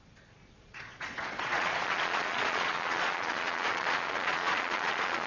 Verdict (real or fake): fake